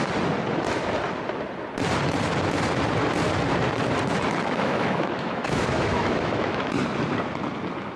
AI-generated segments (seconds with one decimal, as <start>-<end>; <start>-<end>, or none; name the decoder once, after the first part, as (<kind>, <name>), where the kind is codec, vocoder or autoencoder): 4.4-6.7 (autoencoder, DAC-VAE)